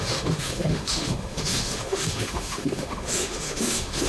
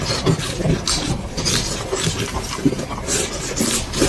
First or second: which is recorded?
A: second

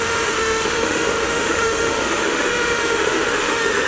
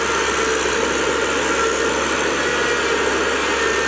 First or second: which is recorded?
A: second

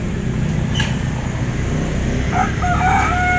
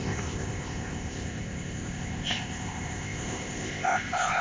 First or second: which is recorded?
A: first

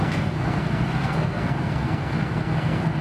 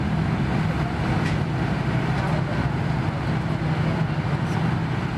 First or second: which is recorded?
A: second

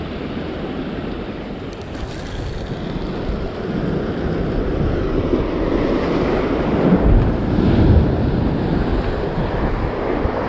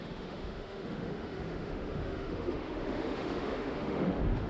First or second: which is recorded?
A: first